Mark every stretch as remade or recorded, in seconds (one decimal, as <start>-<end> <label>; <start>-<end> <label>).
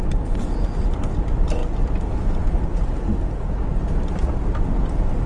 0.0-5.3 recorded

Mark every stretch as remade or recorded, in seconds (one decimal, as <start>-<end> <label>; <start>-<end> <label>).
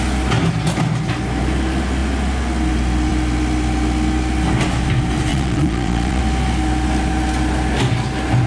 0.0-5.3 recorded; 5.3-6.2 remade; 6.2-8.5 recorded